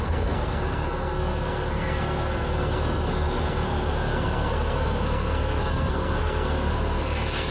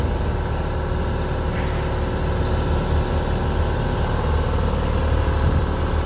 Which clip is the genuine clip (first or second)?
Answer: second